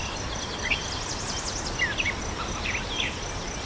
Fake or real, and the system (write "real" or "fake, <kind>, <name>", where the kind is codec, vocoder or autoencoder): real